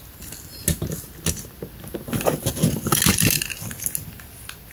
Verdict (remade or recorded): recorded